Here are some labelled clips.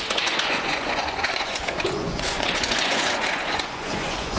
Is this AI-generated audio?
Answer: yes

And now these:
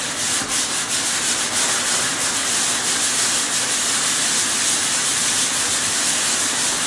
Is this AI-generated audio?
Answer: no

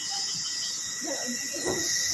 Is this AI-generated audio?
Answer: yes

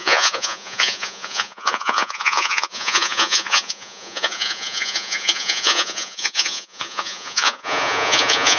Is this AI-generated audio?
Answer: yes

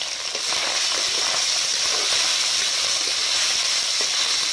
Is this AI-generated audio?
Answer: no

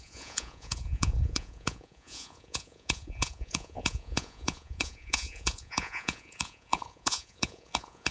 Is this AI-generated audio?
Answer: yes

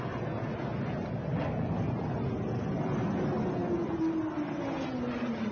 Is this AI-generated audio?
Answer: no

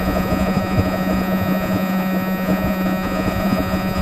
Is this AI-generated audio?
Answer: yes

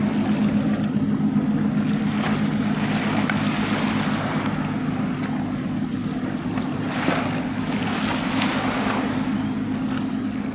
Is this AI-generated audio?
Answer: no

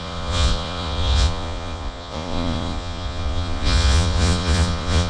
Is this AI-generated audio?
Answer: yes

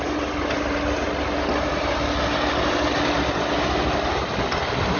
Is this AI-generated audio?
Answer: no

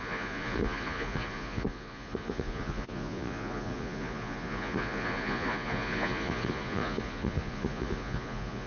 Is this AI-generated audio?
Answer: yes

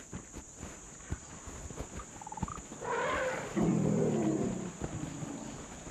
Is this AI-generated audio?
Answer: no